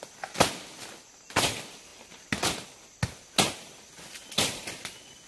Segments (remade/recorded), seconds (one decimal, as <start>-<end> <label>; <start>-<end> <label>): 0.0-5.3 recorded